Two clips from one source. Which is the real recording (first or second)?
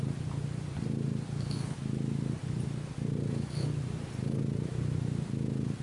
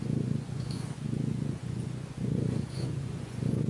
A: first